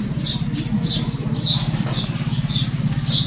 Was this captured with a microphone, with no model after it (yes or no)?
yes